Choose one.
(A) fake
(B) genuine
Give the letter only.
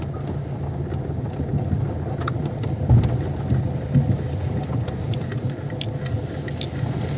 B